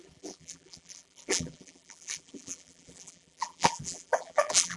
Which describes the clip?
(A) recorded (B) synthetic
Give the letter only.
B